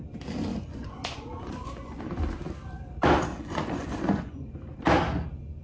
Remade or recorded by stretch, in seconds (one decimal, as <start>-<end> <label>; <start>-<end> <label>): 0.0-0.5 recorded; 0.5-2.2 remade; 2.2-3.3 recorded; 3.3-4.5 remade; 4.5-5.6 recorded

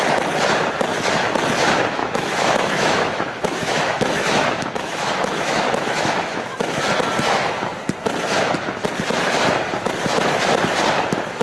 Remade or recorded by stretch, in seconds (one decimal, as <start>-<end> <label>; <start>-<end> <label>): 0.0-2.0 recorded; 2.0-6.9 remade; 6.9-11.4 recorded

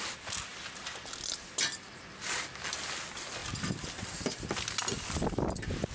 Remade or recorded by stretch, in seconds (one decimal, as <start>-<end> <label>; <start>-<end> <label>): 0.0-5.9 recorded

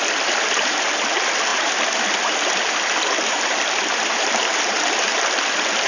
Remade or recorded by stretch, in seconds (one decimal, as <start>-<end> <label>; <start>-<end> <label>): 0.0-5.9 remade

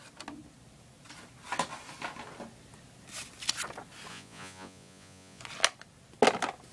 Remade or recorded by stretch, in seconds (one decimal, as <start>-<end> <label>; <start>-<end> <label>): 0.0-4.1 recorded; 4.1-5.4 remade; 5.4-6.7 recorded

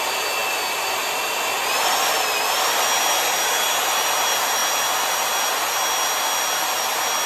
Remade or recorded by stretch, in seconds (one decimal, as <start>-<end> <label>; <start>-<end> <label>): 0.0-7.3 recorded